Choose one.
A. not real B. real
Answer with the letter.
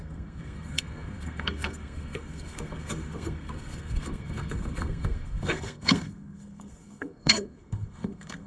A